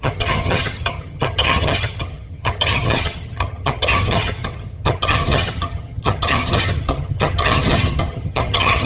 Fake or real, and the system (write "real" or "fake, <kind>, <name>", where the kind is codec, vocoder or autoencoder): fake, vocoder, HiFi-GAN